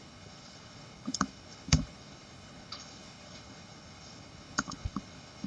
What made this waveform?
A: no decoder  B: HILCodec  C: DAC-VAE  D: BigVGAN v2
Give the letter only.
B